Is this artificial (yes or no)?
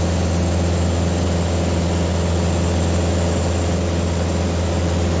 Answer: no